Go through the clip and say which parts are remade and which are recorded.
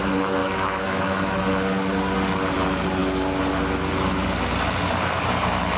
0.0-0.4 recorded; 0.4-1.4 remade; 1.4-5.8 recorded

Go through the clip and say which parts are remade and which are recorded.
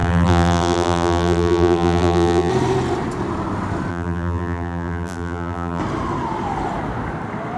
0.0-2.5 remade; 2.5-3.9 recorded; 3.9-5.8 remade; 5.8-7.6 recorded